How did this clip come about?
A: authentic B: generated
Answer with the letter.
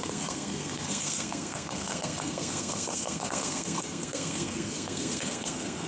B